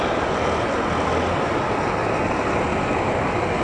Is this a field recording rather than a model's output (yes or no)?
yes